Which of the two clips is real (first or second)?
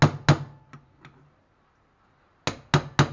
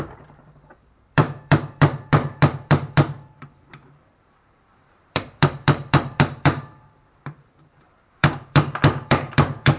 first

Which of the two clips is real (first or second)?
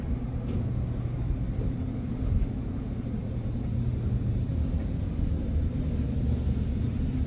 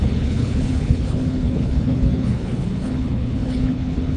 first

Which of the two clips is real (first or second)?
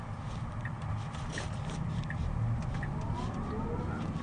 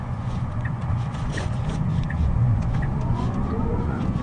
first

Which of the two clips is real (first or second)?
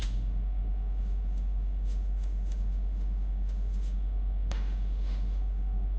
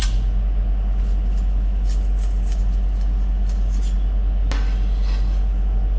second